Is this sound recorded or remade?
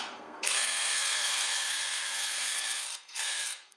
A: remade